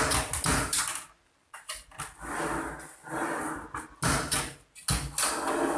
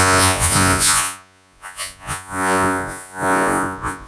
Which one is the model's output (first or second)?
second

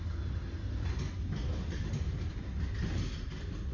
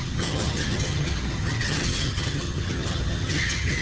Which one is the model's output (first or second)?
second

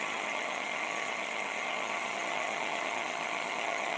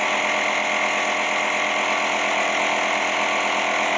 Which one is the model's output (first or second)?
first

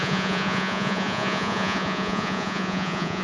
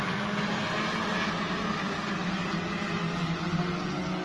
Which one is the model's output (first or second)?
first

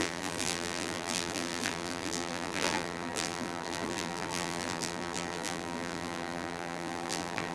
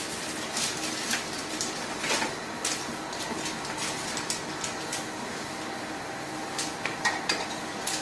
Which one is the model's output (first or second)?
first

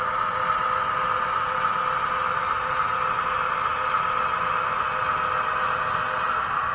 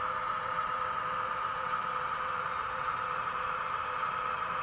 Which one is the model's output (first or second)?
second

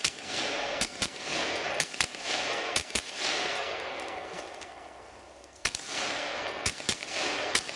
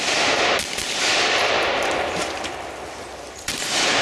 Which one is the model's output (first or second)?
first